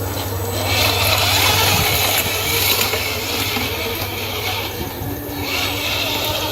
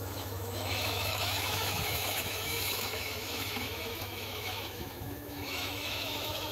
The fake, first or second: second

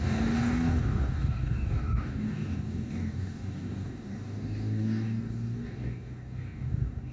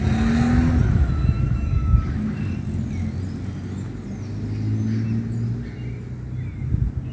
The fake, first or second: first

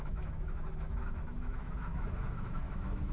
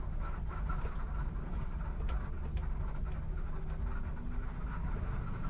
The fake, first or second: first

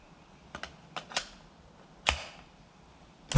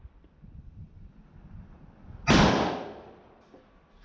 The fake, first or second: second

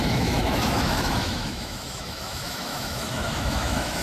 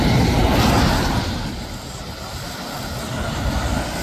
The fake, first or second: first